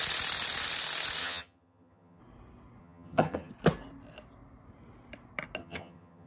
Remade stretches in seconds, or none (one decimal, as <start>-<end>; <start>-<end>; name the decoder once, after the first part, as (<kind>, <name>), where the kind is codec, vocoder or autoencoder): 1.2-2.2 (vocoder, HiFi-GAN); 2.8-3.5; 5.6-6.3